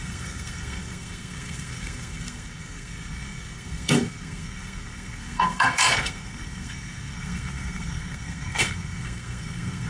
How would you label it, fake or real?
fake